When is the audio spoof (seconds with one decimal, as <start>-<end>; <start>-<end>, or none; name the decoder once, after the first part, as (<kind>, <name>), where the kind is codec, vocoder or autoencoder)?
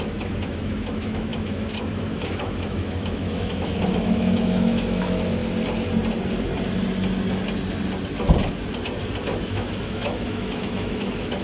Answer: 0.0-5.4 (autoencoder, DAC-VAE); 9.5-11.4